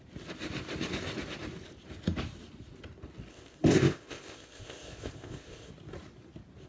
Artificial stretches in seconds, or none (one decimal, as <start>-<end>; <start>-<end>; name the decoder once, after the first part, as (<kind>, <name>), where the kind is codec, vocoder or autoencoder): 3.3-5.7 (codec, ZipCodec)